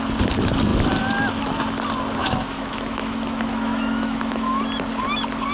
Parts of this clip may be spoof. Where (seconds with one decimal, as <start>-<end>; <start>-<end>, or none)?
2.2-4.6